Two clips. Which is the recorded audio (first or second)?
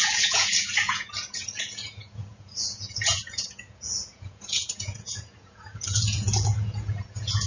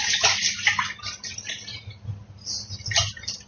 second